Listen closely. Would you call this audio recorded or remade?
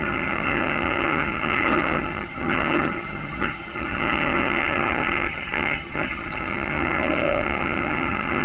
remade